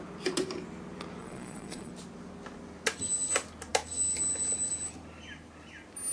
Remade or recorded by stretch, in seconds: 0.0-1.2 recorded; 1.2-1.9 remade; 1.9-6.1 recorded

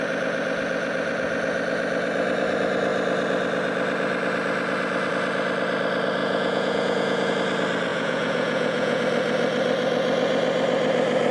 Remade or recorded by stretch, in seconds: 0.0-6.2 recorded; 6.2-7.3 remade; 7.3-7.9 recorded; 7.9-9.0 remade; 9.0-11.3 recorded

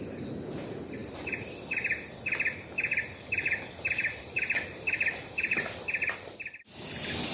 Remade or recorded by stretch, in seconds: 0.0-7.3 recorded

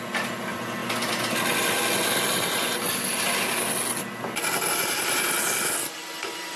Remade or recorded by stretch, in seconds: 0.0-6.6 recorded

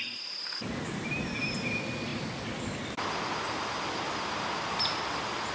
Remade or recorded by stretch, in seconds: 0.0-5.5 recorded

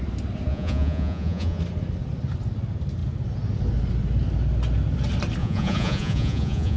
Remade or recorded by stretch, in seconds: 0.0-0.5 recorded; 0.5-1.6 remade; 1.6-5.4 recorded; 5.4-6.8 remade

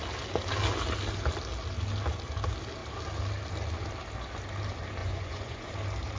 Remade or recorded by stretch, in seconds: 0.0-5.0 recorded; 5.0-5.7 remade; 5.7-6.2 recorded